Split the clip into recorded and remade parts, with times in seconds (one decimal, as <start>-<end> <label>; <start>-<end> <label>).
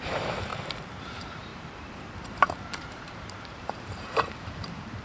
0.0-5.0 remade